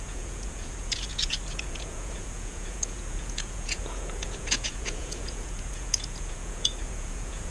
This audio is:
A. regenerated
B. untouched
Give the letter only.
A